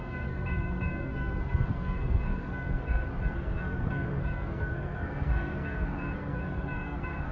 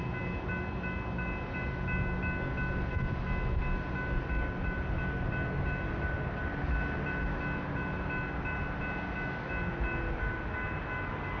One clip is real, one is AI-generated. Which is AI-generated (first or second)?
first